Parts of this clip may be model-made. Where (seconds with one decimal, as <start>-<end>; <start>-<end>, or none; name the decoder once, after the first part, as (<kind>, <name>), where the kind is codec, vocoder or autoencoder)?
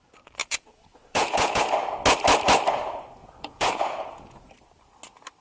0.4-1.6 (vocoder, Vocos); 3.2-4.5